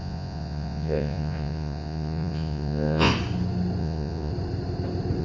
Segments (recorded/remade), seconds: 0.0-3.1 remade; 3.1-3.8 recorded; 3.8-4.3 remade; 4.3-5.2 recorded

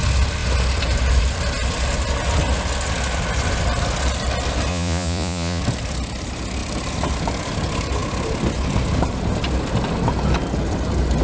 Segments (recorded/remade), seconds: 0.0-4.7 recorded; 4.7-5.6 remade; 5.6-11.2 recorded

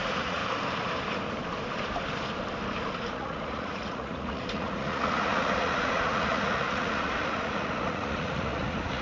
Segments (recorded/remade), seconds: 0.0-0.4 remade; 0.4-3.0 recorded; 3.0-9.0 remade

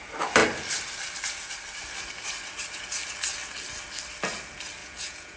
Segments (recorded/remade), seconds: 0.0-4.8 recorded; 4.8-5.4 remade

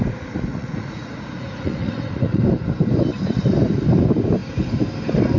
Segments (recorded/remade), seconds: 0.0-0.5 recorded; 0.5-2.4 remade; 2.4-5.4 recorded

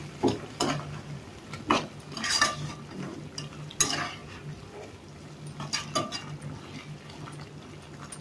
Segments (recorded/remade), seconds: 0.0-8.2 recorded

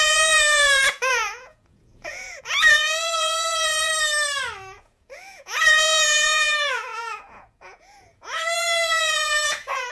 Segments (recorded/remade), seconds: 0.0-3.9 remade; 3.9-4.8 recorded; 4.8-9.9 remade